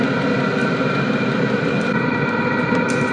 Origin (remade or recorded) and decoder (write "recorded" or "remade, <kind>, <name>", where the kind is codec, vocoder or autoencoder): recorded